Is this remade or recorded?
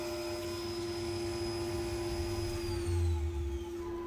recorded